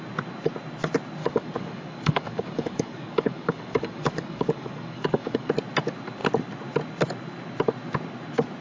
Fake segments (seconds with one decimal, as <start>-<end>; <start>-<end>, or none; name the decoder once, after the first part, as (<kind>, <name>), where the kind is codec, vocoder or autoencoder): 1.2-5.5 (codec, DAC)